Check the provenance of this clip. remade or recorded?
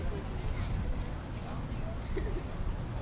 recorded